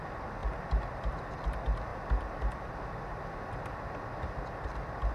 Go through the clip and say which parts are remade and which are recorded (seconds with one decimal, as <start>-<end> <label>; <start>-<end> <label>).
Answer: 0.0-5.1 recorded